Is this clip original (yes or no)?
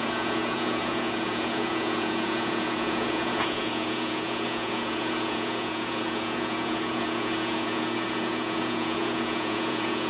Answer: no